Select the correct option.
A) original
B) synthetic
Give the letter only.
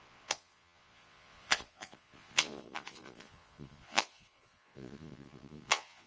B